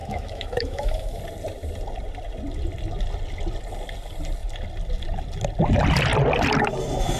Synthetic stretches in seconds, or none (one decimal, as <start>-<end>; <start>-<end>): 0.0-1.2